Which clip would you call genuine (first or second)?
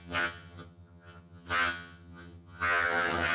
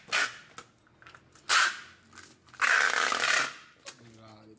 second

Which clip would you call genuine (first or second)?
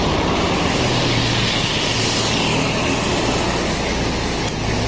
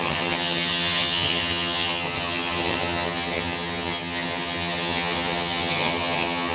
first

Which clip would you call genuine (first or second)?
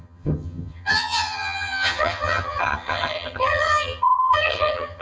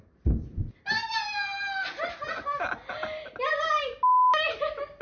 second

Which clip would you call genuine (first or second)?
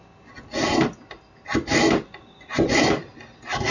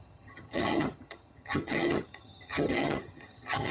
first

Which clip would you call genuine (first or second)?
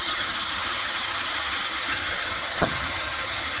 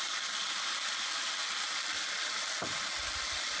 second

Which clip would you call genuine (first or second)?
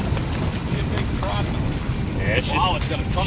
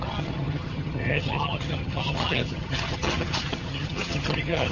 first